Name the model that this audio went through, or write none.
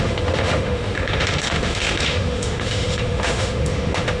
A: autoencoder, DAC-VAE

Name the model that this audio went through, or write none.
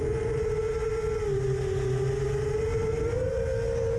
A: none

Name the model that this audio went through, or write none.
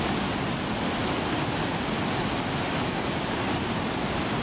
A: none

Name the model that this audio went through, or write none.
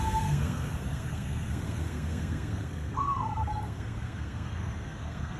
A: codec, SNAC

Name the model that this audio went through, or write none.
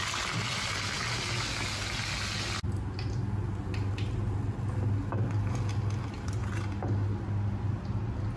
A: none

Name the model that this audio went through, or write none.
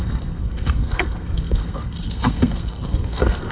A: codec, SNAC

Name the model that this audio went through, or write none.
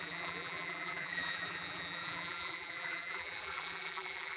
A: vocoder, BigVGAN v2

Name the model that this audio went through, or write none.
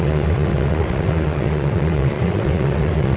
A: vocoder, WaveNeXt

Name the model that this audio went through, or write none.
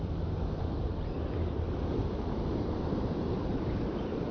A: none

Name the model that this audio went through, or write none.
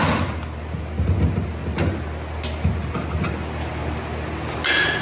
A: none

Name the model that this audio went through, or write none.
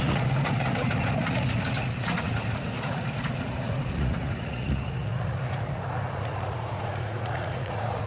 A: vocoder, Vocos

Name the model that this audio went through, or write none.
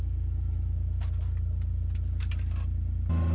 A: none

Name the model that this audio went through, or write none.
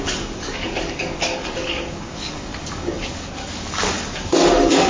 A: codec, DAC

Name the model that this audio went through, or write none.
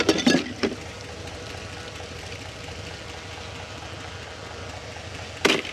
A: none